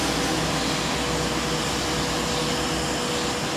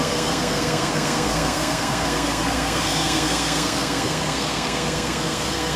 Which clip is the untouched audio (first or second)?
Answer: first